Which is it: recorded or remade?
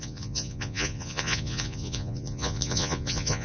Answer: remade